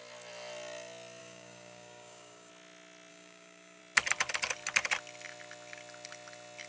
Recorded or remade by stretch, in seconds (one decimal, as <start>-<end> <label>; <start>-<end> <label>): 0.0-1.2 recorded; 1.2-2.5 remade; 2.5-3.1 recorded; 3.1-3.8 remade; 3.8-6.7 recorded